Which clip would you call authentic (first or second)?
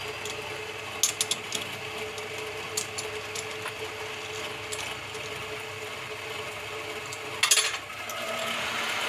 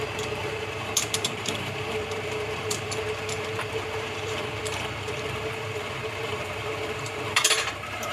first